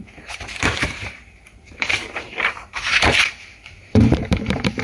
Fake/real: fake